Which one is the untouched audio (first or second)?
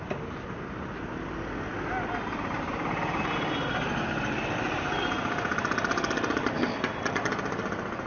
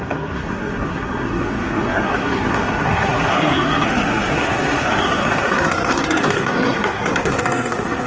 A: first